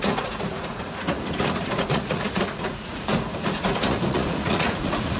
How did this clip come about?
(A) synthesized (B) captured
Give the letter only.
A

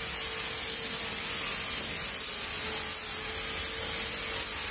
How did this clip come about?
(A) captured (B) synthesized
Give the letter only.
A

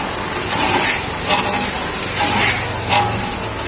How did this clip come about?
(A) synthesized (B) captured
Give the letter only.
B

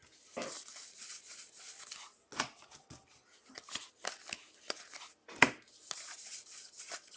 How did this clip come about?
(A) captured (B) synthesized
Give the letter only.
A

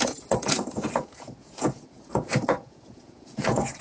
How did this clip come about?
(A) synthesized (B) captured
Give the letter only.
A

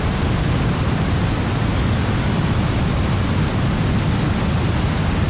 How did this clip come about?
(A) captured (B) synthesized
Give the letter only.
A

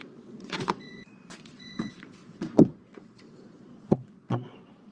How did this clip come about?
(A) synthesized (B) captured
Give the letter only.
A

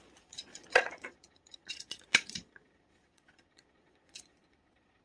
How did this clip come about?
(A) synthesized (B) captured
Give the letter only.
A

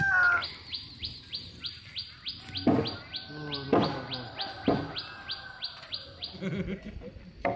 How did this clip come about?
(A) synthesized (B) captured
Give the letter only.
B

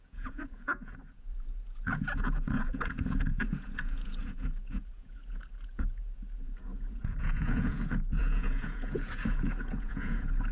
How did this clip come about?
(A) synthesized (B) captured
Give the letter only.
A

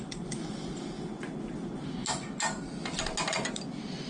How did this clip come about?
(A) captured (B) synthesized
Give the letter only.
A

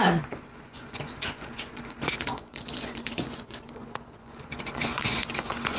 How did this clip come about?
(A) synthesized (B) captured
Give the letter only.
A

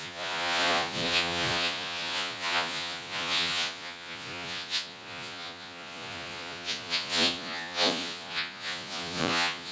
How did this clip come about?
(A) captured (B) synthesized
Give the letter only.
B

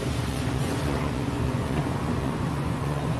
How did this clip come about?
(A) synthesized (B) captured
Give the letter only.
A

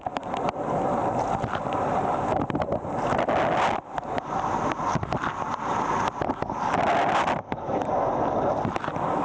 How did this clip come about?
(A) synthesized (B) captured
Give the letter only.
B